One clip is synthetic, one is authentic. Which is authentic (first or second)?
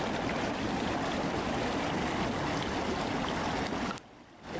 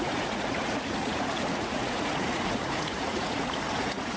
first